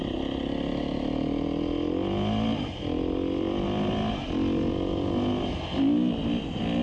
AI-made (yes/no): no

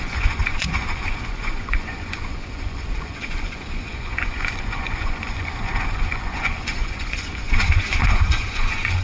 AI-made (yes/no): yes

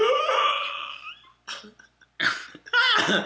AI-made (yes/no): no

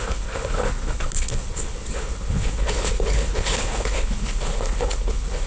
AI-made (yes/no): yes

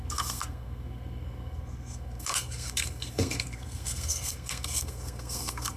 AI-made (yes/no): yes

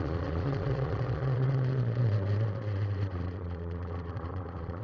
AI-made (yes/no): yes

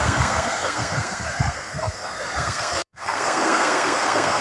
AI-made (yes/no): yes